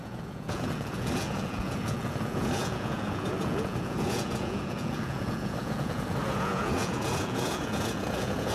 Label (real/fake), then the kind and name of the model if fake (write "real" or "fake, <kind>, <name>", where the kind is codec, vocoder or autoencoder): fake, vocoder, Vocos